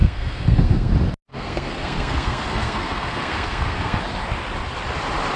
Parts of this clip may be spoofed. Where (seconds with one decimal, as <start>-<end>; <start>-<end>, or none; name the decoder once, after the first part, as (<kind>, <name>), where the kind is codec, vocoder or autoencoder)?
0.0-0.9 (codec, SNAC); 1.3-4.0